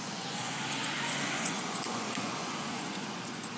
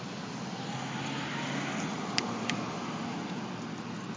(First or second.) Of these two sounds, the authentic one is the second